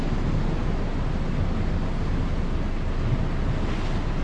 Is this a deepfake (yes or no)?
no